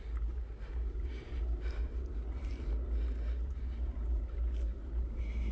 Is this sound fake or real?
real